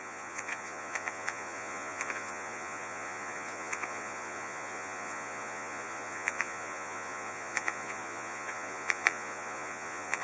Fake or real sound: fake